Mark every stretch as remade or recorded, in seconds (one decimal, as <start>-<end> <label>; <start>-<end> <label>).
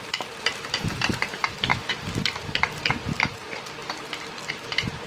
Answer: 0.0-1.7 remade; 1.7-3.2 recorded; 3.2-3.8 remade; 3.8-4.5 recorded; 4.5-5.1 remade